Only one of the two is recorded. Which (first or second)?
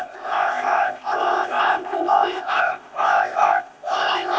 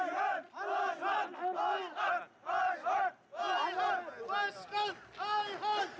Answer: second